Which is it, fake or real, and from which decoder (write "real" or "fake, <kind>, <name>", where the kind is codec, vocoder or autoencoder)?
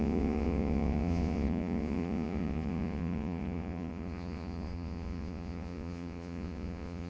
fake, vocoder, Vocos